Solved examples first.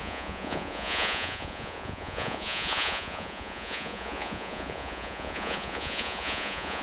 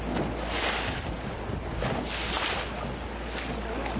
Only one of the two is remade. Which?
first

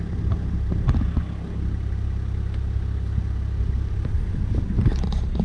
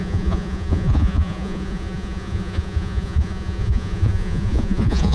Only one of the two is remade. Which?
second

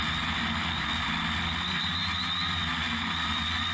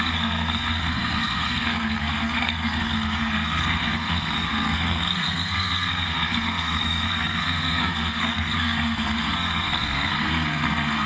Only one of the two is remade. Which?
second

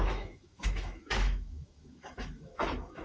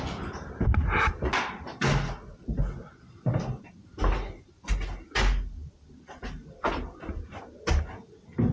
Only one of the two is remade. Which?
first